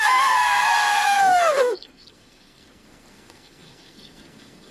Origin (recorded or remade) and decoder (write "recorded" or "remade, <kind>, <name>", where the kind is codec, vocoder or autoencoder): remade, codec, SNAC